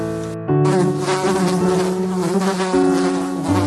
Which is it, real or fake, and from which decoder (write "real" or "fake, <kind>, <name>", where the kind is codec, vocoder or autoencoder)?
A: real